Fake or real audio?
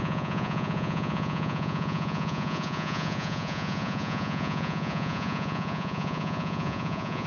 fake